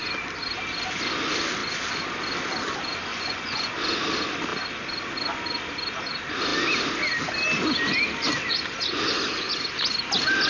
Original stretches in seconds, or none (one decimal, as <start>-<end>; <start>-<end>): 0.0-3.1; 3.7-10.5